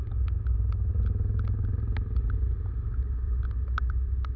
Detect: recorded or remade recorded